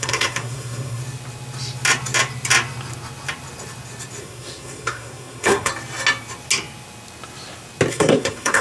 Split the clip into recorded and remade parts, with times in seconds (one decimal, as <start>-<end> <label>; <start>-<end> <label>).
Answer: 0.0-1.0 remade; 1.0-4.2 recorded; 4.2-5.7 remade; 5.7-7.9 recorded; 7.9-8.6 remade